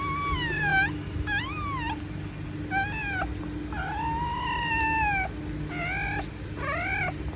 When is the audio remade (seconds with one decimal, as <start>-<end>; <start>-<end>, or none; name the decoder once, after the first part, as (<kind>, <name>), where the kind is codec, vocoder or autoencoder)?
none